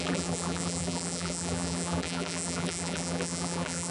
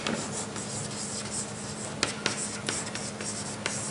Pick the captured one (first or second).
second